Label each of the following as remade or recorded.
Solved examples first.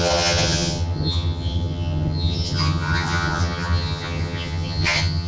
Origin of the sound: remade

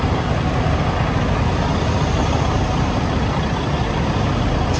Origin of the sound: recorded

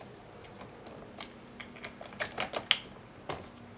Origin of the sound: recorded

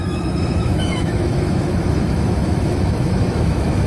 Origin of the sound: remade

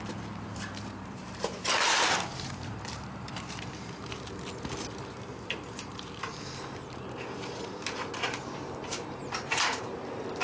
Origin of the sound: remade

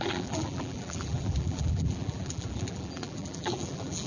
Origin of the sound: remade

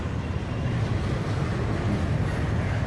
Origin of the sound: recorded